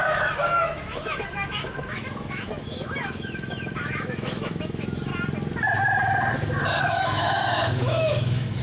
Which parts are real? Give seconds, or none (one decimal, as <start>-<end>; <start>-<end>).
5.1-6.8